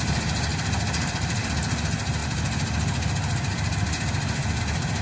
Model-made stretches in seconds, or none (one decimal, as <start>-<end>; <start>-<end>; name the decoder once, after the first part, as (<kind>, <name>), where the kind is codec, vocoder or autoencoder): none